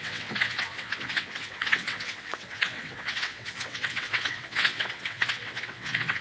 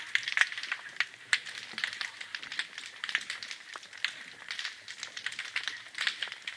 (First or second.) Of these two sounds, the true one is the second